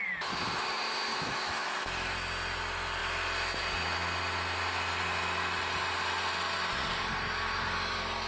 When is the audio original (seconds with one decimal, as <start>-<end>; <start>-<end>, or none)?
0.0-1.1; 2.1-8.3